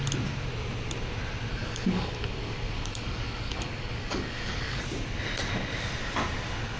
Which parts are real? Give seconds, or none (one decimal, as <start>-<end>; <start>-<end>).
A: 0.0-1.5; 4.8-6.8